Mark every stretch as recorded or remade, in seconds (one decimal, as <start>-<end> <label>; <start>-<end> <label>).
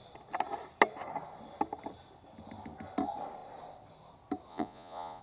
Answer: 0.0-4.5 recorded; 4.5-5.2 remade